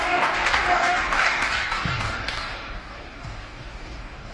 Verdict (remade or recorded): remade